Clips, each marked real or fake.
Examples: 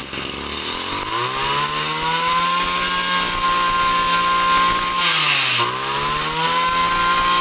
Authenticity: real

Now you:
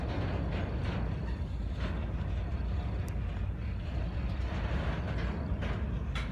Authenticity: real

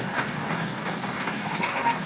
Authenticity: fake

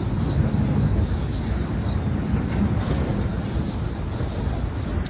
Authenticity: real